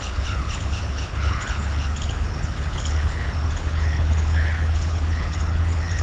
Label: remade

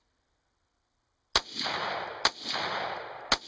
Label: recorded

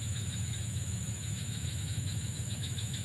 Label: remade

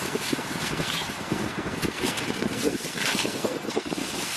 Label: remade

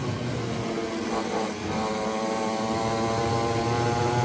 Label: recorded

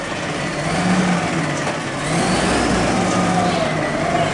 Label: recorded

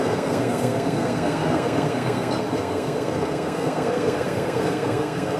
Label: remade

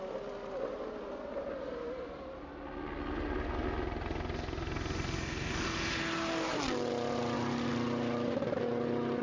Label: recorded